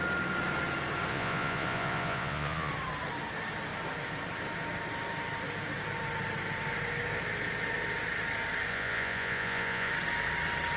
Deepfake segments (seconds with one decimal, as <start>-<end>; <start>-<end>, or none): 1.1-2.7; 8.7-9.9